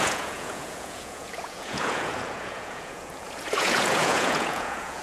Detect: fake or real fake